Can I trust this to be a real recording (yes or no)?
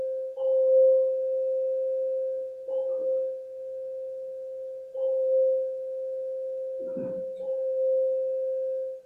yes